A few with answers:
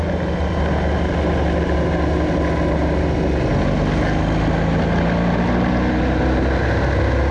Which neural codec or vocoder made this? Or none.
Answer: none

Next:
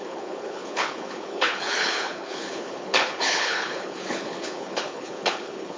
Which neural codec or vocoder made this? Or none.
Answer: codec, HILCodec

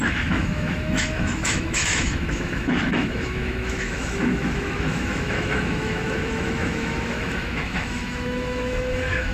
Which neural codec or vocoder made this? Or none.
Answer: autoencoder, DAC-VAE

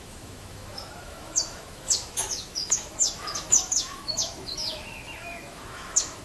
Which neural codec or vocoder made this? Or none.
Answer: autoencoder, DAC-VAE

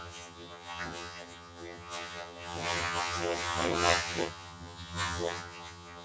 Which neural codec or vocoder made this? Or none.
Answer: vocoder, HiFi-GAN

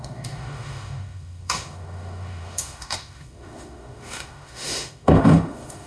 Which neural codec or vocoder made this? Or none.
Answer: autoencoder, DAC-VAE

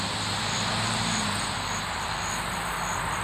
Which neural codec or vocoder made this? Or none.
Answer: vocoder, BigVGAN v2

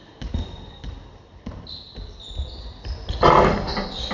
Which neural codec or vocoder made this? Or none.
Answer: none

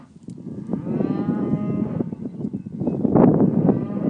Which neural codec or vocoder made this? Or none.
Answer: none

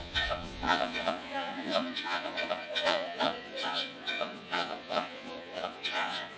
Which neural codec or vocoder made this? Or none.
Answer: vocoder, Vocos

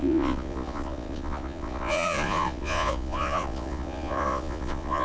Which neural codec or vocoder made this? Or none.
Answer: vocoder, Vocos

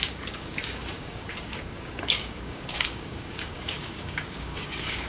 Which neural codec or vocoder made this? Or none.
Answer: codec, DAC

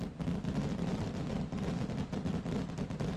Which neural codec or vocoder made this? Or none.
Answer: none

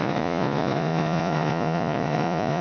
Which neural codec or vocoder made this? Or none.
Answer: vocoder, Vocos